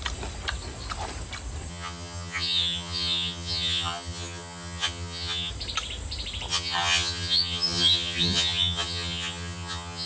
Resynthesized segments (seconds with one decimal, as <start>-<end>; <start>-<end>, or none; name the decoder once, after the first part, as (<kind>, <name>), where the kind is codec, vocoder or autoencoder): 1.7-5.5 (vocoder, HiFi-GAN); 6.5-10.1